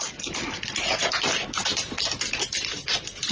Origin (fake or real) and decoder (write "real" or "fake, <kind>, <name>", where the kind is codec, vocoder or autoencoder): real